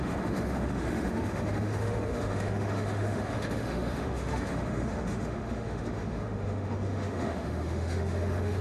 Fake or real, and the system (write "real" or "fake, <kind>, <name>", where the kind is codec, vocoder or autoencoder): fake, autoencoder, DAC-VAE